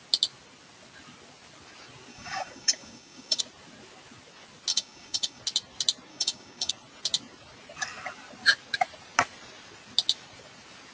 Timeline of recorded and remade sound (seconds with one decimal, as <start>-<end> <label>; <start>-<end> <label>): 0.0-2.1 recorded; 2.1-3.4 remade; 3.4-4.7 recorded; 4.7-5.4 remade; 5.4-6.1 recorded; 6.1-6.7 remade; 6.7-10.9 recorded